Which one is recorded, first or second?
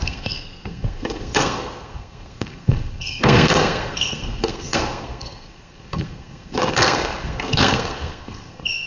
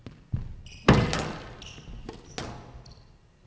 second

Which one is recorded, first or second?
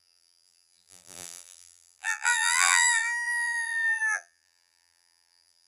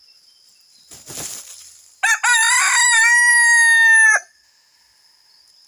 second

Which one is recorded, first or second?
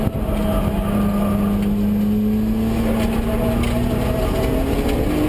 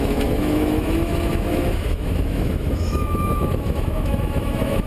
first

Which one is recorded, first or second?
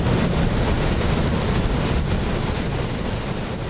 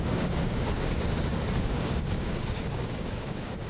first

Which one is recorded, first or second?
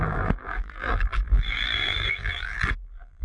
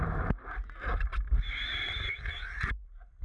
second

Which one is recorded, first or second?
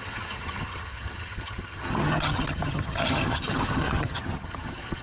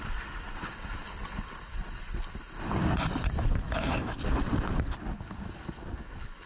second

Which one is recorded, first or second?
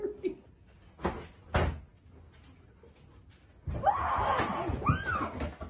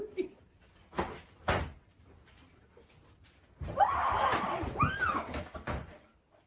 first